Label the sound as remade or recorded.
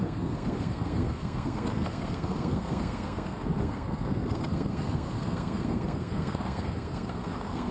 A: remade